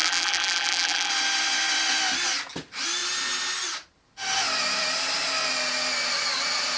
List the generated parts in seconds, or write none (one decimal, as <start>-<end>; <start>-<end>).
0.0-1.1